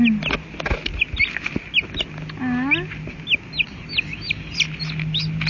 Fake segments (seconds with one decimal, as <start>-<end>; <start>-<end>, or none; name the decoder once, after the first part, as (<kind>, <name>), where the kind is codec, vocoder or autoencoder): none